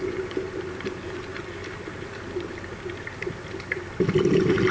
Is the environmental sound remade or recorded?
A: recorded